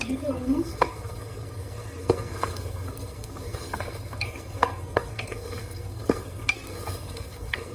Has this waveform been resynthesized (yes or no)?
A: yes